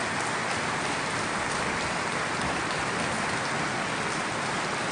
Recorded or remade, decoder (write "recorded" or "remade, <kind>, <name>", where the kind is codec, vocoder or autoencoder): recorded